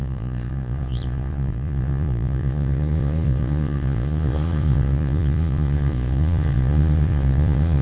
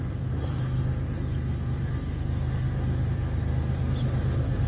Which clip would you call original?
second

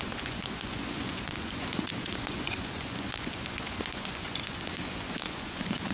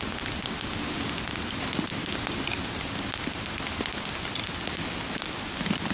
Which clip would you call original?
second